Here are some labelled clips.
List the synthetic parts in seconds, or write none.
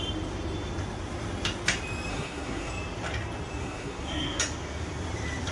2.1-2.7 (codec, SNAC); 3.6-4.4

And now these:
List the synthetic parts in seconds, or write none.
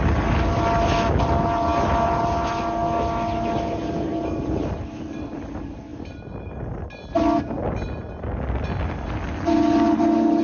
5.9-6.6 (vocoder, BigVGAN v2)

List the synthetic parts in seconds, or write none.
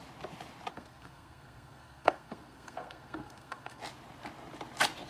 0.7-3.8 (codec, SNAC)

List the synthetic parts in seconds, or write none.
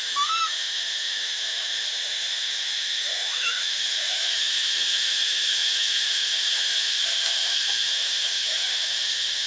0.0-9.5 (autoencoder, DAC-VAE)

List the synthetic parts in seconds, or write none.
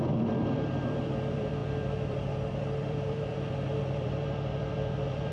0.0-5.3 (vocoder, BigVGAN v2)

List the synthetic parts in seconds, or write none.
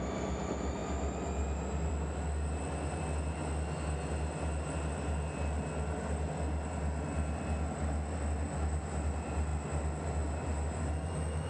none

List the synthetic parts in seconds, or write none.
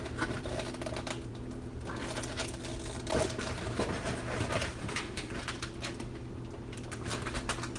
4.8-5.3 (autoencoder, DAC-VAE)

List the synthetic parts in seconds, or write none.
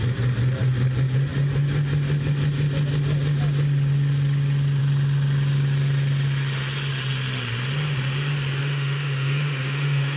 8.6-10.2 (autoencoder, DAC-VAE)